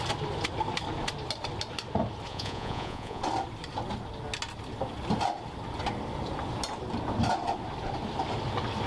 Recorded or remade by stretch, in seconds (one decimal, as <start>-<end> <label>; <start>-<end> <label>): 0.0-2.3 recorded; 2.3-3.2 remade; 3.2-8.9 recorded